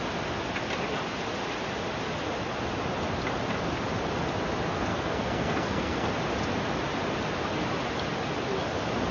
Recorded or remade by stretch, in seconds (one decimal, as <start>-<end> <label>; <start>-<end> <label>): 0.0-4.9 recorded; 4.9-6.1 remade; 6.1-9.1 recorded